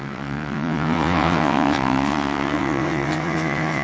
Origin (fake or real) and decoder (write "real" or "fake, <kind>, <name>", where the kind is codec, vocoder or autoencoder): fake, vocoder, WaveNeXt